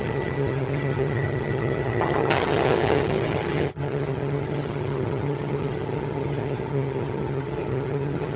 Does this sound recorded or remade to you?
remade